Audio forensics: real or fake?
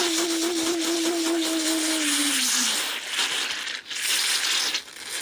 real